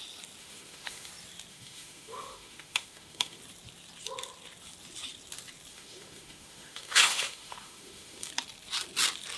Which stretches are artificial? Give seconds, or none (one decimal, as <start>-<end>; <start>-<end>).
0.4-1.1; 1.5-3.4; 5.7-8.3